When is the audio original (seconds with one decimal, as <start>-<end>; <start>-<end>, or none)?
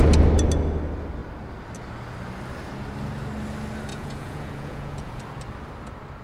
0.0-3.9; 5.2-6.2